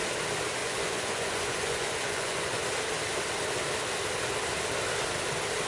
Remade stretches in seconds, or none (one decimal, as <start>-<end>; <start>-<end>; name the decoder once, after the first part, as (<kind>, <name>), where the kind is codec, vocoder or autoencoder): 0.6-2.6 (vocoder, Vocos)